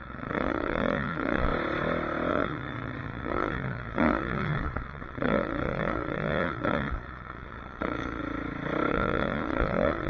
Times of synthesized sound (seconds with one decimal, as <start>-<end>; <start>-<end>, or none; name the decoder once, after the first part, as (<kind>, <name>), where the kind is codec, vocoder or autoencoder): 0.0-1.5 (vocoder, Vocos); 2.3-8.2; 8.9-10.1